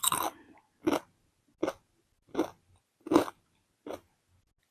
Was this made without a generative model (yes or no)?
yes